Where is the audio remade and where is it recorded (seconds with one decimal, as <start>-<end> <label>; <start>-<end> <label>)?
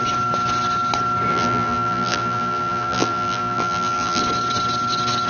0.0-1.3 recorded; 1.3-4.2 remade; 4.2-5.3 recorded